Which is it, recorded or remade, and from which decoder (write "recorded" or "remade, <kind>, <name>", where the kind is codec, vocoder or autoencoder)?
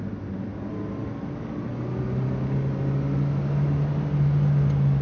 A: recorded